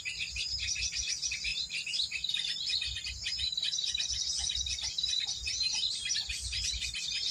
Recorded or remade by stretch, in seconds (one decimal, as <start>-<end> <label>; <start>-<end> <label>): 0.0-1.5 remade; 1.5-5.1 recorded; 5.1-7.3 remade